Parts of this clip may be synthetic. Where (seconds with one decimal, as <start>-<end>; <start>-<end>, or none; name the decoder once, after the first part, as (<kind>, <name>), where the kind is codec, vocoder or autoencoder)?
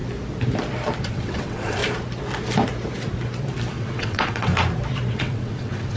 1.1-1.8 (vocoder, WaveNeXt); 3.7-4.5; 5.1-6.0